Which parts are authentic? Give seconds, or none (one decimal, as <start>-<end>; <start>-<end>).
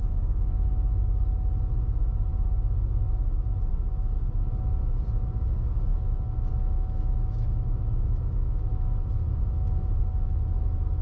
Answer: 0.0-5.9; 10.0-11.0